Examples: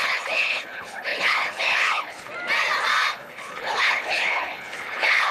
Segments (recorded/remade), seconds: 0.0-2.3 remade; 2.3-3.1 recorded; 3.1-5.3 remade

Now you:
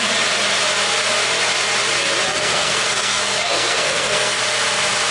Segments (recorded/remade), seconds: 0.0-2.3 recorded; 2.3-4.4 remade; 4.4-5.1 recorded

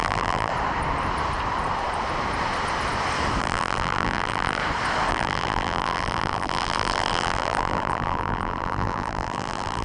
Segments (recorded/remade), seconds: 0.0-0.5 remade; 0.5-3.4 recorded; 3.4-4.6 remade; 4.6-5.1 recorded; 5.1-9.8 remade

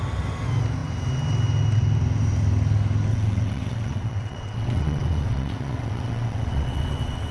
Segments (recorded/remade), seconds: 0.0-3.1 recorded; 3.1-7.3 remade

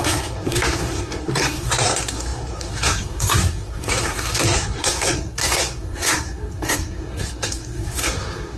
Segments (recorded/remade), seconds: 0.0-8.6 remade

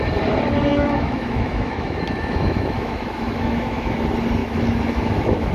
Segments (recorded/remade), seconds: 0.0-0.7 recorded; 0.7-4.0 remade; 4.0-4.4 recorded; 4.4-5.5 remade

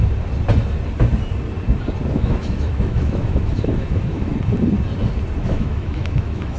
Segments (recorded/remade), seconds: 0.0-2.1 recorded; 2.1-4.3 remade; 4.3-5.4 recorded; 5.4-6.6 remade

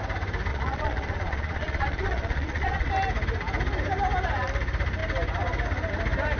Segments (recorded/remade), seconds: 0.0-0.5 recorded; 0.5-2.9 remade; 2.9-6.4 recorded